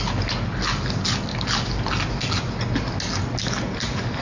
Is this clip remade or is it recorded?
recorded